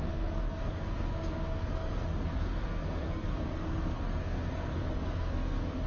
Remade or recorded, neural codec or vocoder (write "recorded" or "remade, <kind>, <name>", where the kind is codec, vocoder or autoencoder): remade, codec, SNAC